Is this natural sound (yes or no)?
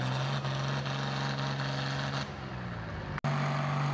yes